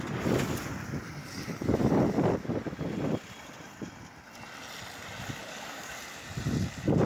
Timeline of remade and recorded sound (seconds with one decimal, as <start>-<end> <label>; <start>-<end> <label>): 0.0-1.2 recorded; 1.2-2.0 remade; 2.0-5.4 recorded; 5.4-5.9 remade; 5.9-7.1 recorded